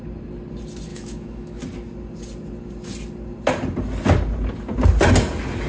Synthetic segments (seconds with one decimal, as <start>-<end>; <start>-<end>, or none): 0.9-1.6